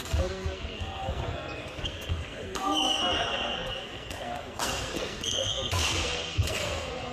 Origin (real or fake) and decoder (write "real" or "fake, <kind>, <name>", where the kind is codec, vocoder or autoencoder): fake, codec, SNAC